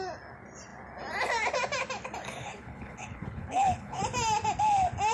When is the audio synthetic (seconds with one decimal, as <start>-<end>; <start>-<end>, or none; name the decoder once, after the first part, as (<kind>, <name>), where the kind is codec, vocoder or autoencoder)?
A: 2.4-4.0 (codec, HILCodec)